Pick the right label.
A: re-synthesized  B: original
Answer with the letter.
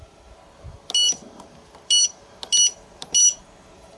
B